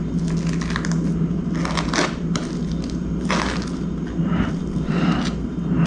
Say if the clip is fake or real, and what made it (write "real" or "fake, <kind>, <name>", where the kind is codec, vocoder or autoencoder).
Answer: real